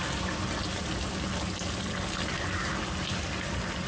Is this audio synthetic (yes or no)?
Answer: no